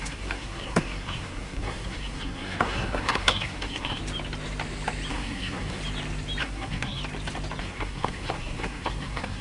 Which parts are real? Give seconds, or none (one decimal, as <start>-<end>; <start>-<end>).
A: 4.0-5.1; 5.8-6.4; 7.0-7.6